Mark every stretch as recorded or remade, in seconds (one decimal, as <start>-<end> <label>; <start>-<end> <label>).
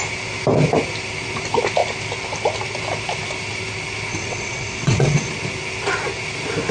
0.0-4.1 recorded; 4.1-5.3 remade; 5.3-6.7 recorded